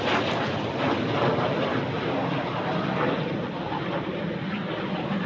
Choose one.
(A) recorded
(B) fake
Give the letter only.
A